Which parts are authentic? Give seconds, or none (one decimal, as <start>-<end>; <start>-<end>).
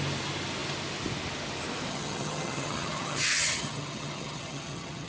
0.0-1.9